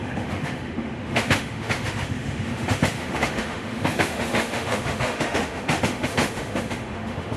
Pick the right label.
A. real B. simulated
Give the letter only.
B